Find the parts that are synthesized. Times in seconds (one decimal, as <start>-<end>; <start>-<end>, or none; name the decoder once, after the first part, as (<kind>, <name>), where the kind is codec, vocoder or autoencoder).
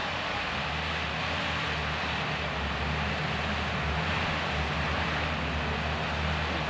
none